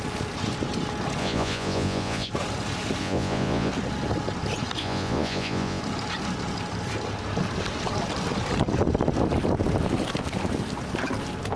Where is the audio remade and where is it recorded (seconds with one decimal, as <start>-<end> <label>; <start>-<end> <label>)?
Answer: 0.0-1.2 recorded; 1.2-2.3 remade; 2.3-3.0 recorded; 3.0-3.7 remade; 3.7-4.8 recorded; 4.8-5.8 remade; 5.8-11.6 recorded